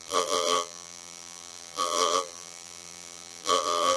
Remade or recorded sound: remade